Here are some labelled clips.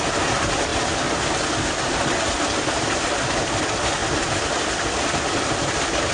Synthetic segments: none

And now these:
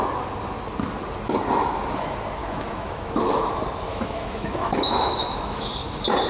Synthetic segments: 2.4-3.5 (autoencoder, DAC-VAE); 3.9-5.7

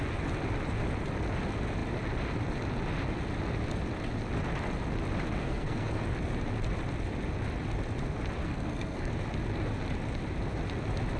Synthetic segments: 5.4-6.0 (codec, SNAC); 8.4-9.1

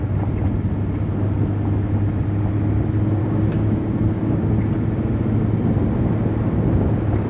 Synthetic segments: 3.2-4.5 (codec, DAC)

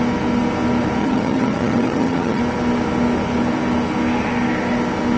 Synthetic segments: 1.0-2.4 (vocoder, HiFi-GAN)

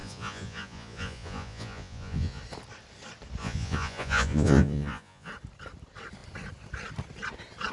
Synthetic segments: 0.0-2.4 (vocoder, Vocos); 3.4-5.3

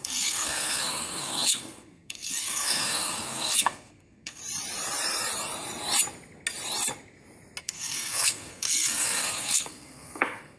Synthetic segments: 0.0-4.4 (codec, SNAC); 7.6-10.6